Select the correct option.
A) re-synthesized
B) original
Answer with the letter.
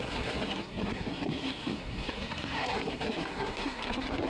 A